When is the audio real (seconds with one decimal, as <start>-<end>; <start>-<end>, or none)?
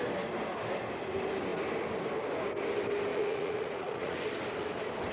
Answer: 0.0-3.1; 4.2-5.1